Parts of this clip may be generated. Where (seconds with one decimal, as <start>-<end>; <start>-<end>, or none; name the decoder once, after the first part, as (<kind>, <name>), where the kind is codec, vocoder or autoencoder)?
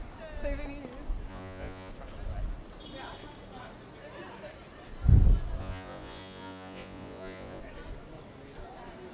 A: 1.3-1.9 (vocoder, Vocos); 5.6-7.6